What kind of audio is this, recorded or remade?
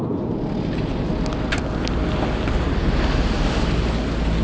recorded